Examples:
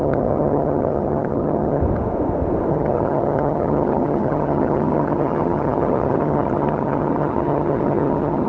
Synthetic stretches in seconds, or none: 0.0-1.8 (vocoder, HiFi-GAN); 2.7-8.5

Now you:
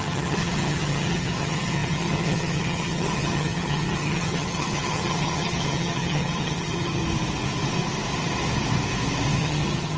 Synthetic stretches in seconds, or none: 0.0-7.0 (vocoder, HiFi-GAN); 9.4-10.0

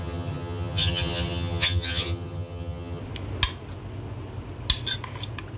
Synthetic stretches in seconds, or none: 0.0-3.0 (vocoder, HiFi-GAN)

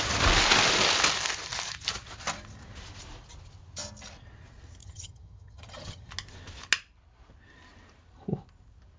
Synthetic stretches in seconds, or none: 4.8-6.1 (vocoder, HiFi-GAN)

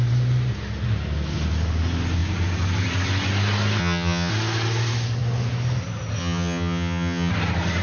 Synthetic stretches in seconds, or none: 3.8-4.3 (vocoder, HiFi-GAN); 6.2-7.3